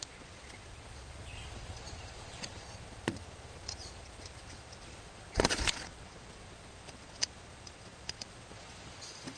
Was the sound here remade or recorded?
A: remade